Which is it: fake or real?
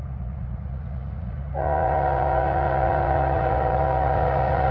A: fake